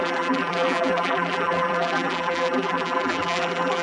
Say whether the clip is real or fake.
fake